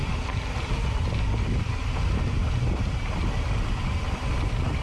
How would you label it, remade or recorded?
recorded